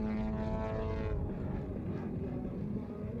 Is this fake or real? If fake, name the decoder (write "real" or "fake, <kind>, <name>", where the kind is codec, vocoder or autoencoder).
real